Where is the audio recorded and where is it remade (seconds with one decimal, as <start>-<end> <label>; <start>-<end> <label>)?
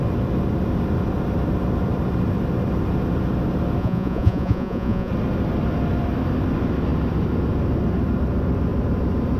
0.0-3.8 recorded; 3.8-5.1 remade; 5.1-9.4 recorded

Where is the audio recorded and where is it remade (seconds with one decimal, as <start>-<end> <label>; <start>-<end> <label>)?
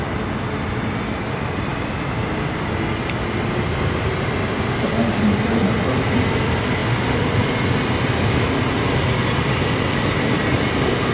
0.0-11.1 recorded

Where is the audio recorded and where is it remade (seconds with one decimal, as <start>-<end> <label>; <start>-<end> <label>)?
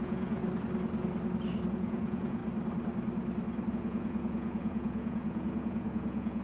0.0-0.4 remade; 0.4-1.7 recorded; 1.7-2.4 remade; 2.4-3.7 recorded; 3.7-6.4 remade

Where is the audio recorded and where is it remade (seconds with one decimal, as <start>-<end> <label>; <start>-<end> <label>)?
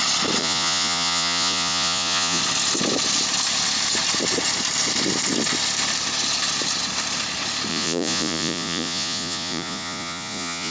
0.0-0.4 recorded; 0.4-2.4 remade; 2.4-7.7 recorded; 7.7-10.7 remade